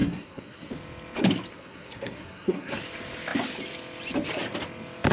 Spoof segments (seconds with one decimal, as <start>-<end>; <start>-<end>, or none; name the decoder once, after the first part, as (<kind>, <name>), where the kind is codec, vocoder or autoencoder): 0.0-0.7 (codec, SNAC); 1.5-2.8

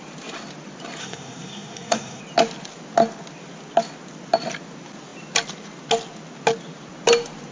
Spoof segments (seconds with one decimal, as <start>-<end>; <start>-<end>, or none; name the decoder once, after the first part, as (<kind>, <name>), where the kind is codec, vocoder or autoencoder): 1.0-2.2 (codec, SNAC)

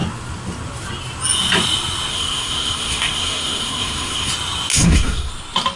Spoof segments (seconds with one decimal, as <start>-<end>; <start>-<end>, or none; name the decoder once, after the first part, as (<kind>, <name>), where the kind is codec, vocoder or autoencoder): 2.1-4.3 (codec, SNAC); 4.7-5.3

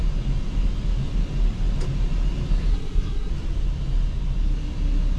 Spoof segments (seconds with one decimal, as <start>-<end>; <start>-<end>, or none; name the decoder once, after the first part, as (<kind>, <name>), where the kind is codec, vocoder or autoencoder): 2.7-3.3 (codec, SNAC)

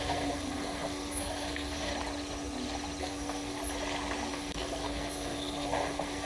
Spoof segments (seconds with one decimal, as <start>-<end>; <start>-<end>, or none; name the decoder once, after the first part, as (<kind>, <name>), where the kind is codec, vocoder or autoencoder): 0.0-1.9 (codec, SNAC); 3.0-3.6; 4.3-6.3

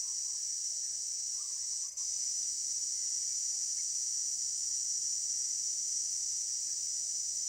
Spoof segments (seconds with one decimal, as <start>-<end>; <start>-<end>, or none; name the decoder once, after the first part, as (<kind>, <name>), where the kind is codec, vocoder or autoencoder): none